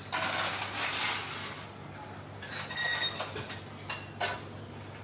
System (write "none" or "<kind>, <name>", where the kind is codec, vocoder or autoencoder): none